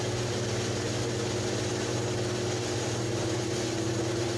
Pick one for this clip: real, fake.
real